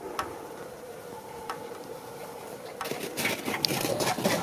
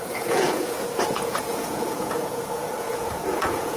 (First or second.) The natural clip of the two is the first